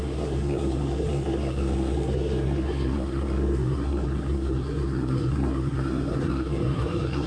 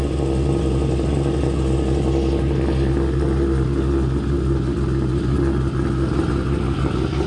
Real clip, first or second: second